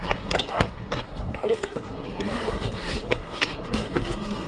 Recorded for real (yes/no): no